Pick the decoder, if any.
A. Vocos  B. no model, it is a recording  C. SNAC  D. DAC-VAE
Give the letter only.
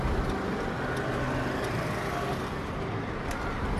B